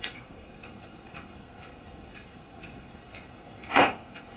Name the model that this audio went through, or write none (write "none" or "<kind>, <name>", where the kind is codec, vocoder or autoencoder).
codec, SNAC